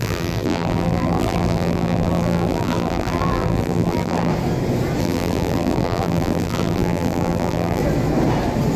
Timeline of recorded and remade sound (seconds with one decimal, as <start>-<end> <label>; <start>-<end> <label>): 0.0-4.3 remade; 4.3-5.0 recorded; 5.0-7.8 remade; 7.8-8.8 recorded